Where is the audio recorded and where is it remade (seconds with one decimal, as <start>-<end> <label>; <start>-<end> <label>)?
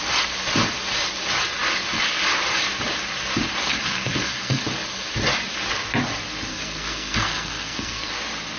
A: 0.0-3.6 recorded; 3.6-4.6 remade; 4.6-6.5 recorded; 6.5-8.1 remade; 8.1-8.6 recorded